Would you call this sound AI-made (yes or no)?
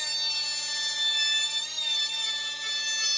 no